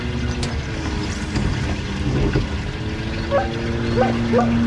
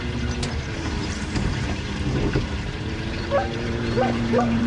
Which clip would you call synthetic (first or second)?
second